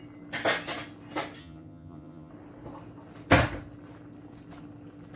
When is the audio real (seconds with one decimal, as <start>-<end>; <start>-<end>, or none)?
0.0-1.4; 2.3-5.2